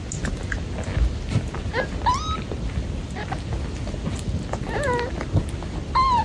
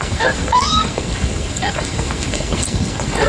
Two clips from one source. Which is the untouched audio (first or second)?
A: first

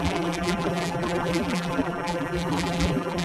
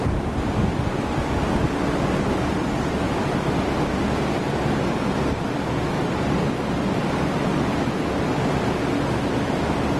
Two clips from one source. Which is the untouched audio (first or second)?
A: second